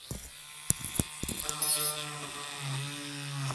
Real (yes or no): yes